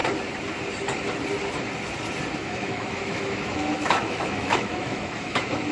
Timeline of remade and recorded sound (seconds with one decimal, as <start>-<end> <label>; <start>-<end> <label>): 0.0-2.4 recorded; 2.4-5.7 remade